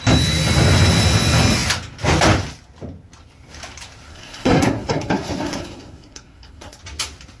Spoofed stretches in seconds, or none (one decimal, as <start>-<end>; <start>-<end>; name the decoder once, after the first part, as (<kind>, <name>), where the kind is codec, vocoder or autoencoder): 4.1-6.8 (codec, SNAC)